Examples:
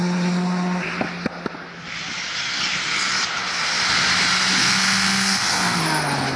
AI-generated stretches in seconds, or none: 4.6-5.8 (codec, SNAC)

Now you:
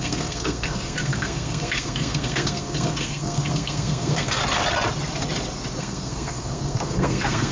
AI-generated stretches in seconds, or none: 0.0-4.4 (codec, SNAC); 5.8-7.5

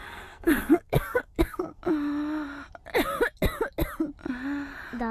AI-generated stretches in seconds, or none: 0.0-1.8 (codec, SNAC)

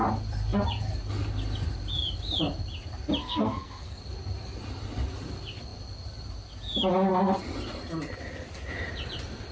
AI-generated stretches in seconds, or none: 3.2-4.0 (codec, SNAC)

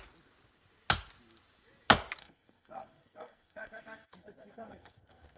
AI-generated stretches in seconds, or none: 2.2-5.4 (codec, SNAC)

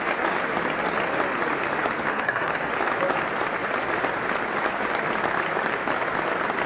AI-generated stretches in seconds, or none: 2.1-2.7 (codec, SNAC)

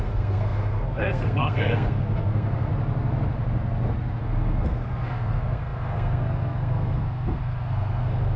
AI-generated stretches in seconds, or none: 0.0-2.7 (codec, SNAC); 4.2-8.4

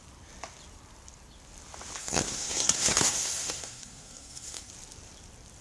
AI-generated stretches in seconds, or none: 2.0-4.7 (codec, SNAC)